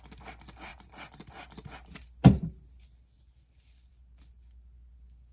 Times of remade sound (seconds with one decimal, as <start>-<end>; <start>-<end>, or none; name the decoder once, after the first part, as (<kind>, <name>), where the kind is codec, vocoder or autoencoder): none